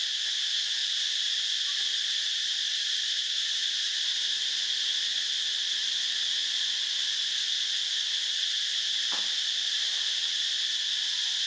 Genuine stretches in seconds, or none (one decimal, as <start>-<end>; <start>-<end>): 0.0-0.8; 4.5-11.5